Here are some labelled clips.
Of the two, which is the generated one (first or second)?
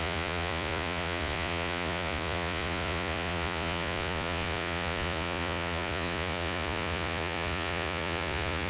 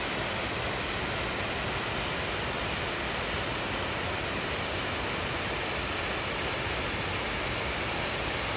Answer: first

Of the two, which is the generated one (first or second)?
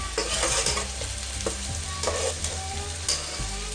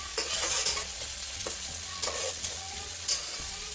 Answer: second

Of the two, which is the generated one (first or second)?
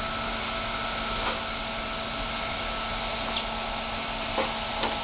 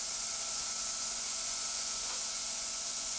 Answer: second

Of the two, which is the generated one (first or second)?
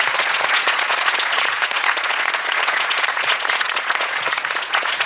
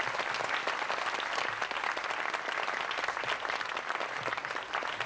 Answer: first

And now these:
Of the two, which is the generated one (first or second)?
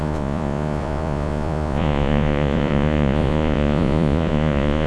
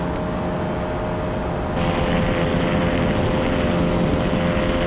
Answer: first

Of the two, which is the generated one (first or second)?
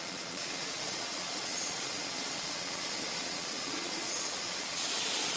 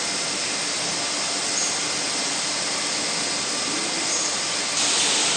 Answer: first